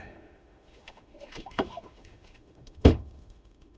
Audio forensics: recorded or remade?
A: remade